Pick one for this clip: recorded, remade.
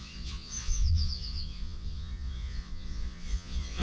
remade